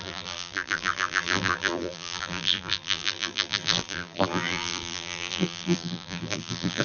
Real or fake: fake